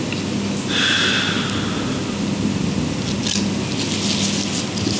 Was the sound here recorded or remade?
recorded